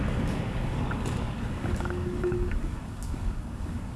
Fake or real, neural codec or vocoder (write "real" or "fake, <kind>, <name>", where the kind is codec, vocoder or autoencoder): fake, codec, DAC